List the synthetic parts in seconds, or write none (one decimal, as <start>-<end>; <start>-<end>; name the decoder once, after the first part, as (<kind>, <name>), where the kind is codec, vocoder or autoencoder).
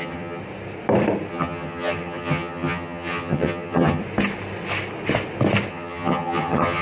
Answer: 0.0-0.4 (vocoder, HiFi-GAN); 1.3-4.0; 5.7-6.8